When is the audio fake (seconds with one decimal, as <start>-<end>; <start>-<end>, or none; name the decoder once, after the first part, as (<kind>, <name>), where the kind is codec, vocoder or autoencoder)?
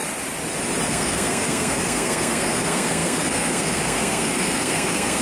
0.9-5.2 (codec, SNAC)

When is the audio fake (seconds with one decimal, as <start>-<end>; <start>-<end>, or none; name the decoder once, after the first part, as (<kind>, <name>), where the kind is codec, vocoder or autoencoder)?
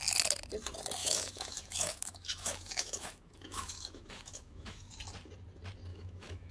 1.0-4.9 (autoencoder, DAC-VAE); 5.9-6.5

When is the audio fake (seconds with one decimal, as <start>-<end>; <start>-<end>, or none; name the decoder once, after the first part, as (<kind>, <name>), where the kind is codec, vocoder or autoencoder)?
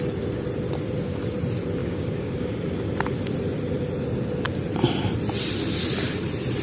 1.8-2.5 (codec, DAC)